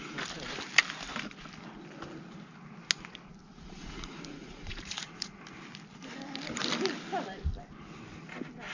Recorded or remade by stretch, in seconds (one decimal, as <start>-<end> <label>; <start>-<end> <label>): 0.0-3.4 recorded; 3.4-5.4 remade; 5.4-8.7 recorded